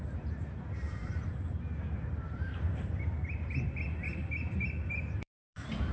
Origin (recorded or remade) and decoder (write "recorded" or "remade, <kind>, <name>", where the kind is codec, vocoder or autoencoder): remade, vocoder, BigVGAN v2